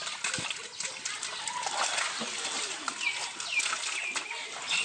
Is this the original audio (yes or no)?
yes